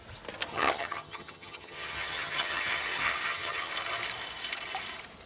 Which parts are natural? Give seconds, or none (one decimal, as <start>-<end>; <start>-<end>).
0.0-0.5; 3.7-5.3